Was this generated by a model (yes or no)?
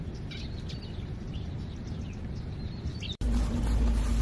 no